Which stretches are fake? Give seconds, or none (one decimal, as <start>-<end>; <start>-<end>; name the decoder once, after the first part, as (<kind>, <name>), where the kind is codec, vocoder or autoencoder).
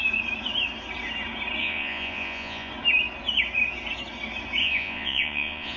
1.6-2.7 (vocoder, Vocos); 4.6-5.8